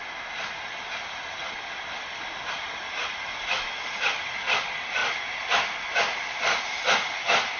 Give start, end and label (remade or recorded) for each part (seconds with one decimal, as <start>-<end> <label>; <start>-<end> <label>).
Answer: 0.0-7.6 recorded